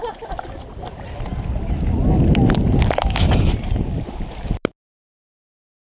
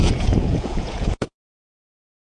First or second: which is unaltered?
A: first